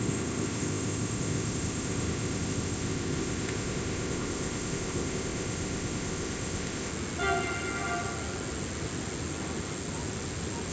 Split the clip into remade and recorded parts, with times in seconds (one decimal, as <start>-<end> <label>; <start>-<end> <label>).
0.0-6.9 remade; 6.9-10.7 recorded